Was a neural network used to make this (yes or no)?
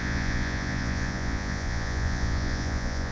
yes